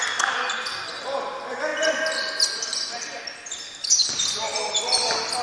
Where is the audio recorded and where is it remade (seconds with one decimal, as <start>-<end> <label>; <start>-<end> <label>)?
0.0-5.4 recorded

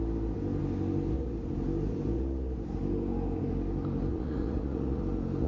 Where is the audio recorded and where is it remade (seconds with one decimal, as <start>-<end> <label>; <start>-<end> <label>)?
0.0-4.1 recorded; 4.1-5.0 remade; 5.0-5.5 recorded

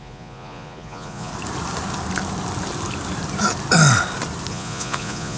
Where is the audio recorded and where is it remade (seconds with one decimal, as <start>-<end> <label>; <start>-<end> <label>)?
0.0-1.3 remade; 1.3-4.5 recorded; 4.5-5.4 remade

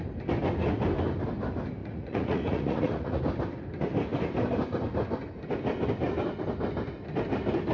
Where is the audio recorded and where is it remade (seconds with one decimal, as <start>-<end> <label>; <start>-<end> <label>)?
0.0-1.8 recorded; 1.8-3.2 remade; 3.2-7.7 recorded

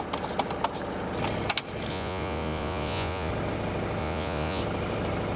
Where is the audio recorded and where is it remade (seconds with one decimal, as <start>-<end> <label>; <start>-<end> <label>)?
0.0-1.9 recorded; 1.9-3.3 remade; 3.3-4.0 recorded; 4.0-4.6 remade; 4.6-5.4 recorded

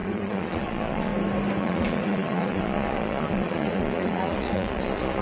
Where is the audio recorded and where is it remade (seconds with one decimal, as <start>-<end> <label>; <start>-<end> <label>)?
0.0-1.1 remade; 1.1-1.6 recorded; 1.6-5.2 remade

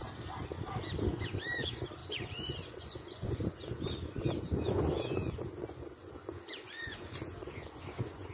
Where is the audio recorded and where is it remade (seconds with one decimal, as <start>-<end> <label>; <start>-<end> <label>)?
0.0-1.1 recorded; 1.1-8.3 remade

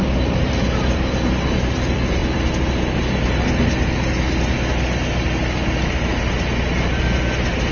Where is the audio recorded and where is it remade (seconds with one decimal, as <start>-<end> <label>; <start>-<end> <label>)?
0.0-7.7 recorded